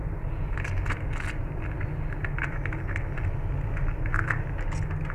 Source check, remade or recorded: recorded